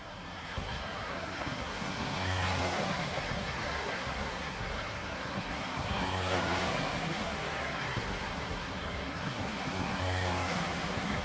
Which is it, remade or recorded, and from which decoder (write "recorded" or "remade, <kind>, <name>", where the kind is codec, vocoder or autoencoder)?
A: remade, codec, SNAC